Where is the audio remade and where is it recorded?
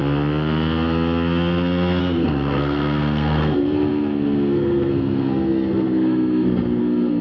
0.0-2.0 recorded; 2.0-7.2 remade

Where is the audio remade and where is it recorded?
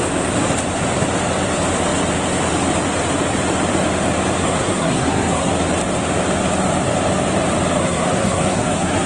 0.0-4.4 recorded; 4.4-5.5 remade; 5.5-7.8 recorded; 7.8-9.1 remade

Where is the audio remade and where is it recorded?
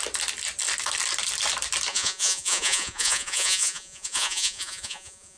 0.0-1.9 recorded; 1.9-5.4 remade